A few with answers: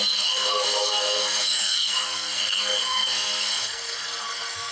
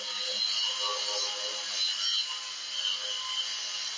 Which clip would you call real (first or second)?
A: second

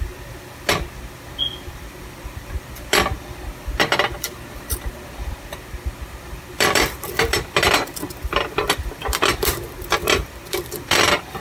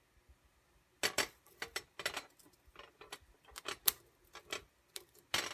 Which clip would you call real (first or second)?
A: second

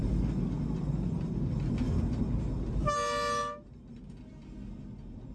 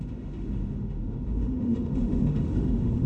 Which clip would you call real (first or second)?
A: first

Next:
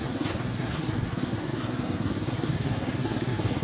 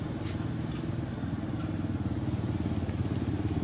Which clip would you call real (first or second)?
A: second